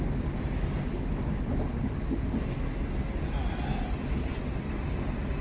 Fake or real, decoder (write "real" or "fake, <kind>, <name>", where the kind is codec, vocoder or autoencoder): real